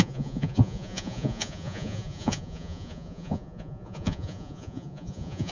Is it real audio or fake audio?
fake